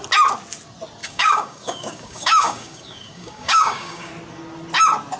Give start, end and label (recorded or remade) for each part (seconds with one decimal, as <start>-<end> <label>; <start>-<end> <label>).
0.0-1.0 recorded; 1.0-4.1 remade; 4.1-5.2 recorded